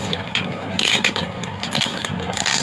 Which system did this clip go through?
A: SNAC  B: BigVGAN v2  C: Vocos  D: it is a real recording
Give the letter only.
A